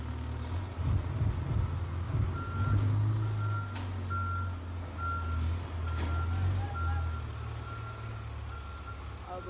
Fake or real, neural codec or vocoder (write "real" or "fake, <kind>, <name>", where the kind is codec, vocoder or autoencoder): real